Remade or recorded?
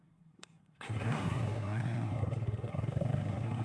remade